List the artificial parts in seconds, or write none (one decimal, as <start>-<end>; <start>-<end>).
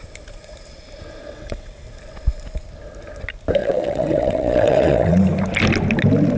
1.2-1.8; 3.6-5.2